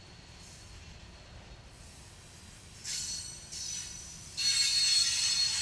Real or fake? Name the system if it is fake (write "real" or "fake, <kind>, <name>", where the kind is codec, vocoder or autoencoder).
real